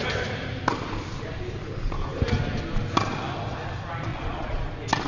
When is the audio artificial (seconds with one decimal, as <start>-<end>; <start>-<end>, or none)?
4.1-4.6